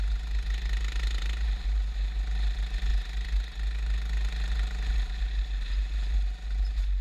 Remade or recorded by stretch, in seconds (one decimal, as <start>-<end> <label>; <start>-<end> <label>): 0.0-7.0 recorded